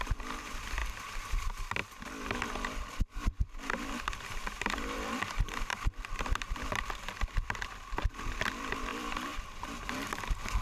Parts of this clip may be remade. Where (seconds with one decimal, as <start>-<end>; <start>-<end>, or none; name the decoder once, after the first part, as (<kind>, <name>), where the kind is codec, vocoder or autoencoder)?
0.0-0.8 (vocoder, BigVGAN v2); 1.3-10.6